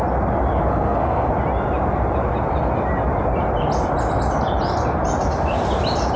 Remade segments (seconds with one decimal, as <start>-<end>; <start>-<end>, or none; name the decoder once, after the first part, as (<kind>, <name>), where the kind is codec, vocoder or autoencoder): 0.7-1.3 (codec, SNAC)